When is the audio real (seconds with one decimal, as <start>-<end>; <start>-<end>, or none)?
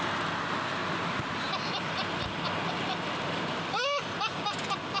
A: 0.0-5.0